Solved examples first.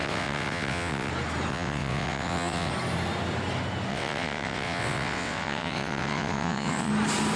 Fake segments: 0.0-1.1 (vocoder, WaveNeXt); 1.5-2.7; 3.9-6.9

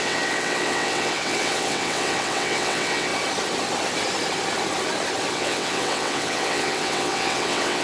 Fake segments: 0.0-3.1 (vocoder, WaveNeXt); 5.3-7.8